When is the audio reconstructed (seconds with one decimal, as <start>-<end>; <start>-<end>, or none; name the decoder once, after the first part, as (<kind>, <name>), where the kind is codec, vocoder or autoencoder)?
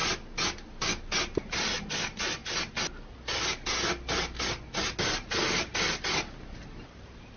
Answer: none